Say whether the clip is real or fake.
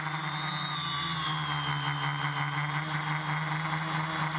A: real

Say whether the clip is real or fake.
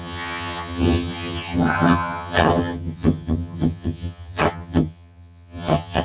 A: fake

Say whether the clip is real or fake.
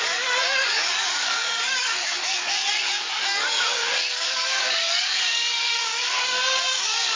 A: fake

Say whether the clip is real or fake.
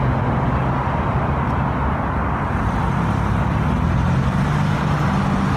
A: real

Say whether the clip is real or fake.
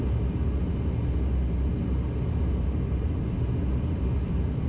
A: real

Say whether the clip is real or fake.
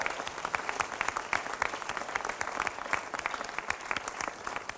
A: real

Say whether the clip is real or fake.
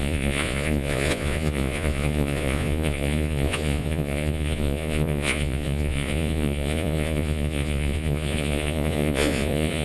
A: fake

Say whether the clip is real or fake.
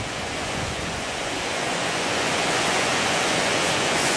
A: fake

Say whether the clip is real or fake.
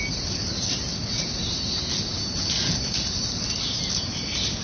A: real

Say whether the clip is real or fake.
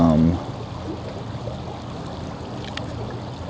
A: real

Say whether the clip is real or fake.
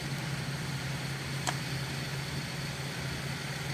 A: fake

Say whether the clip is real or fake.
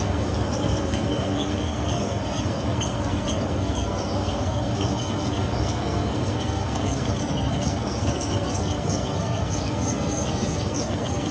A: fake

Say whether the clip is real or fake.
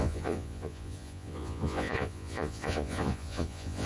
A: fake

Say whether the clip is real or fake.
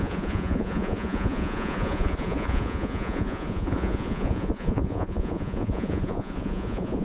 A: fake